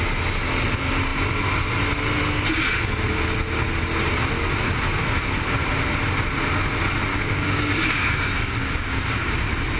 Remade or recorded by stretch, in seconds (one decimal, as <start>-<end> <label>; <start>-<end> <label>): 0.0-7.1 recorded; 7.1-9.3 remade; 9.3-9.8 recorded